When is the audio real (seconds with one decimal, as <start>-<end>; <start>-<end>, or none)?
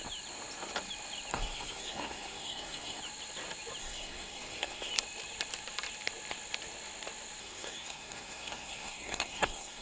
0.0-1.3; 3.0-3.8; 4.9-7.4